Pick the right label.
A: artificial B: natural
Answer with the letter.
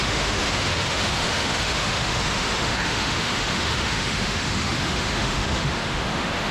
A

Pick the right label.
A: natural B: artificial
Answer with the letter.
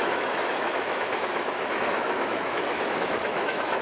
B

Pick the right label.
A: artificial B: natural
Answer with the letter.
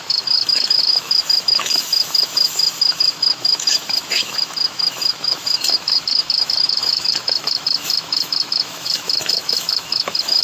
A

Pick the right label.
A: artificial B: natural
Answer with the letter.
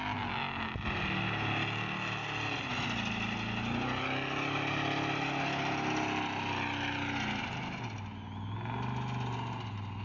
B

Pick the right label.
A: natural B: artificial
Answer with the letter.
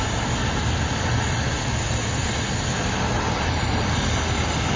A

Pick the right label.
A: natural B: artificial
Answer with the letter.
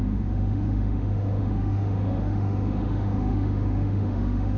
B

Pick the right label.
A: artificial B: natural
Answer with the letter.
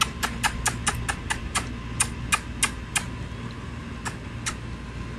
B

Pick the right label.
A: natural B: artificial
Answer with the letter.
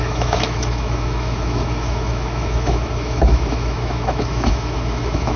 B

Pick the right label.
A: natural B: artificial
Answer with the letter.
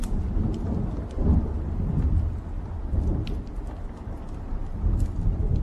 A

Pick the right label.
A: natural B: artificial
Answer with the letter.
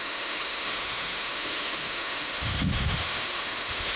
B